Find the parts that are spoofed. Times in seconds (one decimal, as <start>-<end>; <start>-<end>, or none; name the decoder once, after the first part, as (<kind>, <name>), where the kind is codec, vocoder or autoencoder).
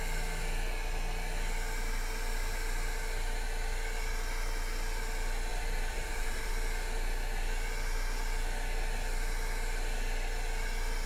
5.5-6.5 (vocoder, BigVGAN v2)